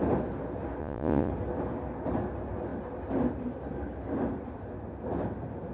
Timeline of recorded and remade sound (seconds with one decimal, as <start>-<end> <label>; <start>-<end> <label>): 0.0-0.8 recorded; 0.8-1.3 remade; 1.3-5.7 recorded